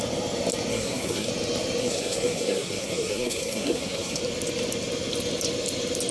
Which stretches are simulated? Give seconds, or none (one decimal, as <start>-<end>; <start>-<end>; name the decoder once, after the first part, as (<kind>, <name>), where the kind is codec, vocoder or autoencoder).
0.7-1.3 (codec, SNAC); 1.8-4.2